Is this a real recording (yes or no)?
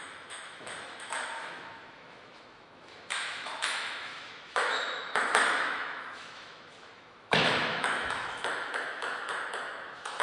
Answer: no